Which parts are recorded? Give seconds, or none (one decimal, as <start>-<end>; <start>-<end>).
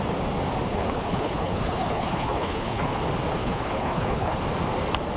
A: 0.0-0.7; 3.0-3.4; 4.4-5.2